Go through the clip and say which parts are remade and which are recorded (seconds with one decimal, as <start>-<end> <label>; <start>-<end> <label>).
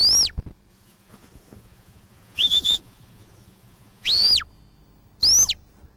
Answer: 0.0-0.7 recorded; 0.7-4.3 remade; 4.3-6.0 recorded